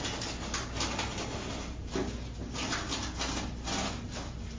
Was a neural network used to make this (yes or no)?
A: no